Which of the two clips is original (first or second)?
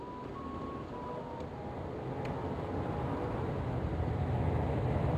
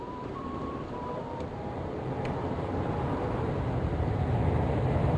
first